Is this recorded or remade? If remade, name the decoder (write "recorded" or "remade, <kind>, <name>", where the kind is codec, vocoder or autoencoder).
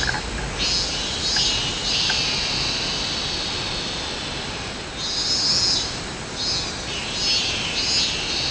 recorded